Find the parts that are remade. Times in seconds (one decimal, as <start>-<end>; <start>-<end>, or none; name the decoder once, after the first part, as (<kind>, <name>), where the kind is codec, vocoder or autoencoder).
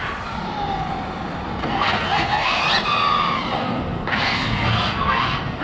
1.6-2.6 (codec, SNAC); 3.6-5.6